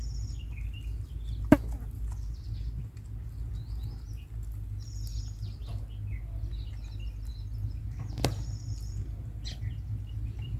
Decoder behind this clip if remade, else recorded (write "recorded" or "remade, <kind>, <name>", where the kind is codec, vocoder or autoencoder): recorded